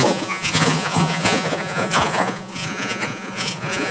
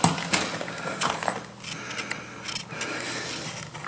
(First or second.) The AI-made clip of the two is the first